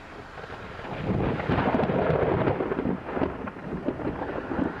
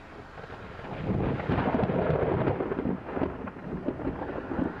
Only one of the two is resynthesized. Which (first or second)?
first